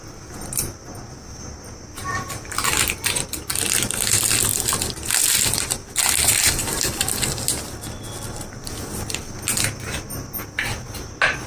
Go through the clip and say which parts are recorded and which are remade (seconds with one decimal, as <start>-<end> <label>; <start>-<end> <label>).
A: 0.0-11.5 recorded